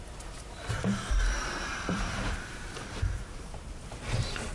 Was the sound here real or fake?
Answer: fake